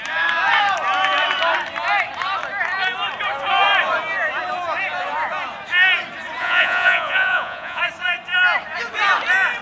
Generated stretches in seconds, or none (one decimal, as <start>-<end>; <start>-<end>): 6.4-7.8